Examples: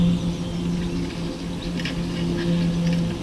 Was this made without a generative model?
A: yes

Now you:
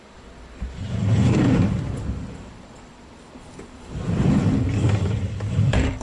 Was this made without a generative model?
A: no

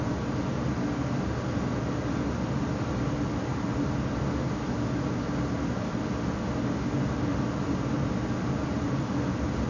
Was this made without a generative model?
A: yes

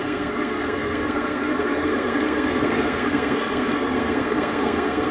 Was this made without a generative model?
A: no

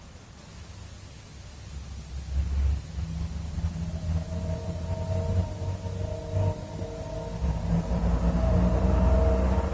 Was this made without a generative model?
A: yes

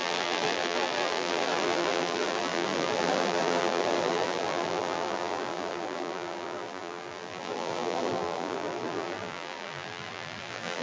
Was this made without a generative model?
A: no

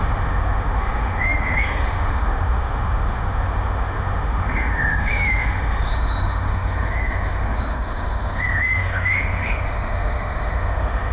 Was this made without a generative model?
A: no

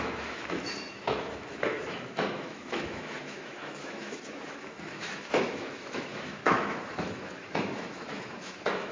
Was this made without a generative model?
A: no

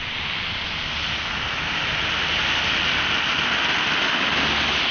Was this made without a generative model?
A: yes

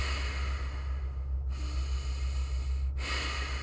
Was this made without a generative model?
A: yes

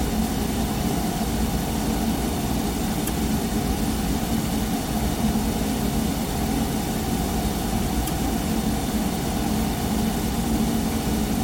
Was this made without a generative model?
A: yes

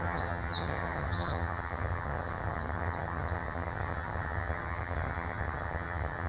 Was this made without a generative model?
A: no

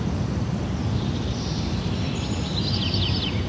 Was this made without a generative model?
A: yes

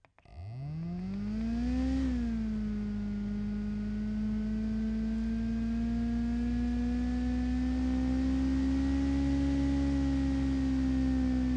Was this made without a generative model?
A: yes